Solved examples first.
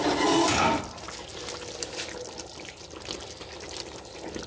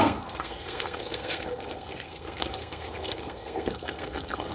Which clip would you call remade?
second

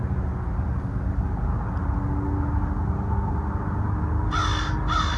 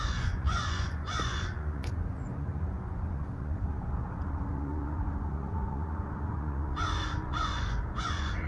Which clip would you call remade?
second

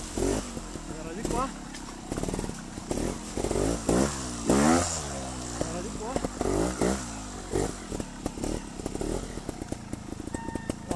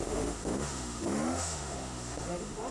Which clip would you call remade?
second